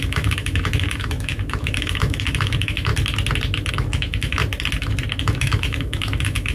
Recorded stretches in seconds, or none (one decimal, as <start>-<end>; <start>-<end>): 2.9-3.7; 4.4-5.2